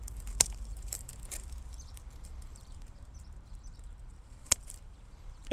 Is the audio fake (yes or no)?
yes